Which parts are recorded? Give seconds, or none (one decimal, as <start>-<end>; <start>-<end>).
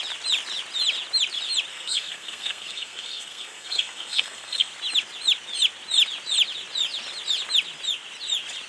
0.0-1.7; 4.7-8.7